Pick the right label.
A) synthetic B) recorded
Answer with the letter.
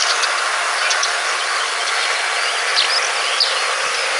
B